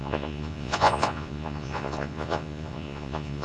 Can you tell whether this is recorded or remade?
remade